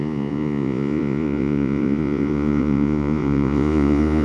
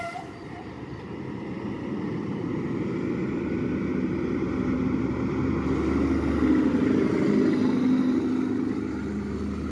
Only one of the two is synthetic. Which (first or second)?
first